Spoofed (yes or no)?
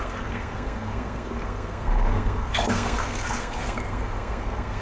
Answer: yes